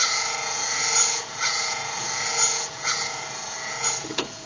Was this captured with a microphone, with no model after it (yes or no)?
no